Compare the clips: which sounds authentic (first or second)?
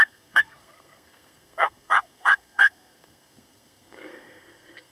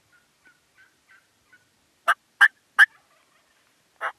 second